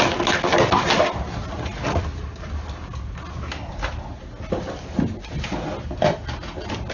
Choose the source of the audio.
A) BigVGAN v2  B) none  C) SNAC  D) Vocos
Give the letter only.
B